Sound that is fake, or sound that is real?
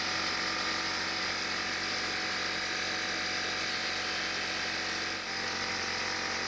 real